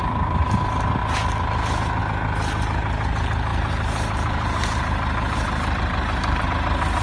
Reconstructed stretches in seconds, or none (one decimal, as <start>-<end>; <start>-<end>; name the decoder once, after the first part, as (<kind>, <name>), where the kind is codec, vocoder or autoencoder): 0.0-0.6 (vocoder, BigVGAN v2); 1.0-2.0; 3.5-6.5